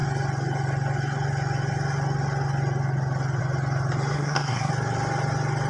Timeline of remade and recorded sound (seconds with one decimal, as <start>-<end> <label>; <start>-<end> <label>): 0.0-4.1 recorded; 4.1-4.7 remade; 4.7-5.7 recorded